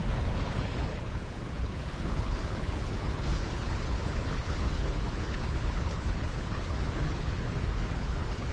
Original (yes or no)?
no